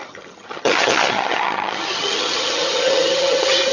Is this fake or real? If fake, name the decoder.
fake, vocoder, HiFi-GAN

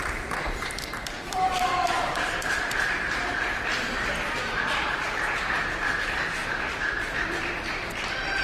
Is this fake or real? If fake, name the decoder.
fake, vocoder, BigVGAN v2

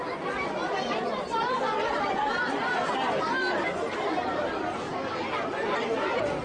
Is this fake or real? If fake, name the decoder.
fake, vocoder, BigVGAN v2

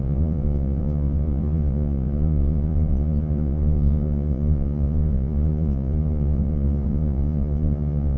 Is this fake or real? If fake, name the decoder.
fake, vocoder, Vocos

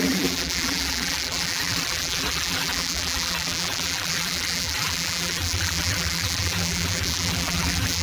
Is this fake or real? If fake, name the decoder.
fake, vocoder, BigVGAN v2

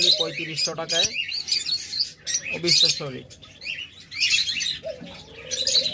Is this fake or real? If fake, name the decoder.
real